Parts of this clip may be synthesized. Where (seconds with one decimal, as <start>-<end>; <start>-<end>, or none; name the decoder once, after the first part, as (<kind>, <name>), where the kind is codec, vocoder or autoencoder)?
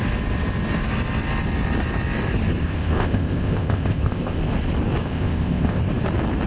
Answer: 2.6-4.4 (codec, ZipCodec); 5.0-5.8